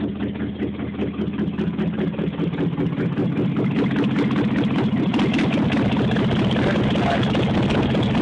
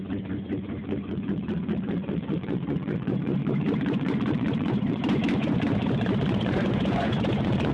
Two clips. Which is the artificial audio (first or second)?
second